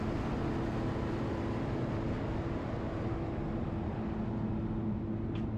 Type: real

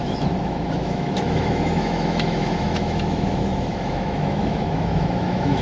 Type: fake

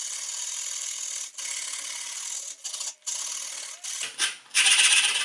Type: real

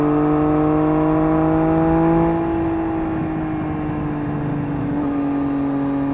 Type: real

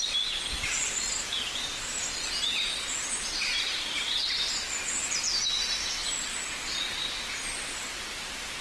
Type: real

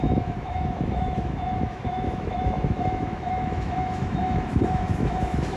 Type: fake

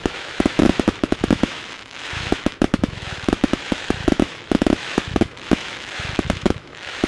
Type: fake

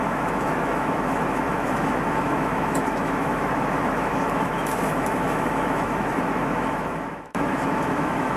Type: fake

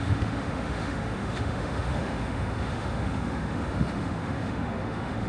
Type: fake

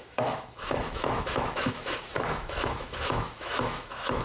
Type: fake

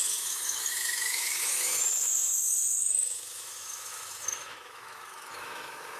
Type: fake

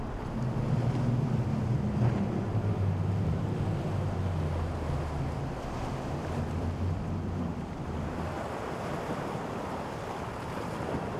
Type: real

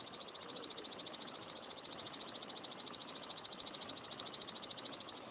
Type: fake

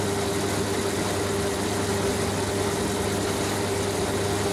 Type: real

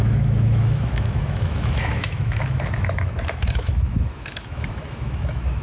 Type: fake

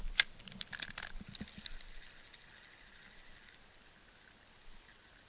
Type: real